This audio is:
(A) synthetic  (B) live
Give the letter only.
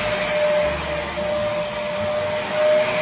B